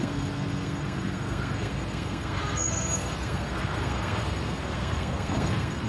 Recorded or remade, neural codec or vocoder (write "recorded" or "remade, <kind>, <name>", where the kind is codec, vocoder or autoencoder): remade, codec, SNAC